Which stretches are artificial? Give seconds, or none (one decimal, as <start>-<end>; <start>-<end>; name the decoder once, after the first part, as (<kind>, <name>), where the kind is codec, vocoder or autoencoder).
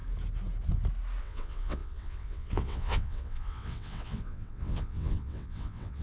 1.2-6.0 (vocoder, WaveNeXt)